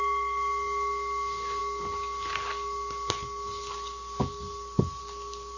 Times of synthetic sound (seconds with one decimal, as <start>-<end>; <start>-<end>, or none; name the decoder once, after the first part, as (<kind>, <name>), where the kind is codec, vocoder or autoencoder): none